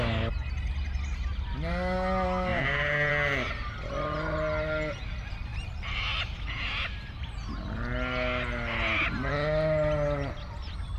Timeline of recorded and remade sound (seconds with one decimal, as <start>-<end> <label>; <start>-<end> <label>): 0.0-2.5 recorded; 2.5-3.1 remade; 3.1-5.5 recorded; 5.5-6.0 remade; 6.0-11.0 recorded